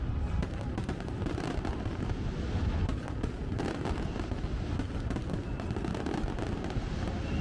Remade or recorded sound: recorded